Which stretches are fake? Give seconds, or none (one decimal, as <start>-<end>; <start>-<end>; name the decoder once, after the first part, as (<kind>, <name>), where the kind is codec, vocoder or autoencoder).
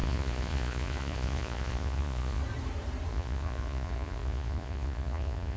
0.0-2.4 (vocoder, Vocos); 3.1-5.6